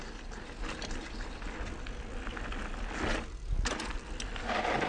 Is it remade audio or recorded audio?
recorded